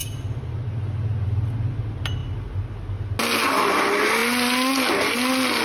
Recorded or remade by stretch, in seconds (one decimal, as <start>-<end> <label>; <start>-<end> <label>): 0.0-5.6 recorded